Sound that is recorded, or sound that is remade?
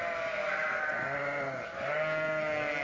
recorded